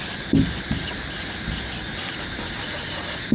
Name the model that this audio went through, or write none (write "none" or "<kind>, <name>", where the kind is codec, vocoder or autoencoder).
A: none